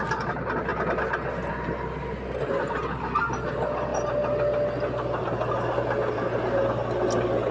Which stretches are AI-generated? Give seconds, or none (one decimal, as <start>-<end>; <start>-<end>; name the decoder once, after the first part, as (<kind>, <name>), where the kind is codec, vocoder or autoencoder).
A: none